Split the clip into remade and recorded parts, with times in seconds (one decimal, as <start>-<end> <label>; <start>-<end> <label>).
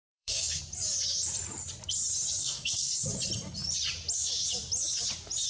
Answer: 0.0-0.6 remade; 0.6-2.4 recorded; 2.4-3.0 remade; 3.0-5.5 recorded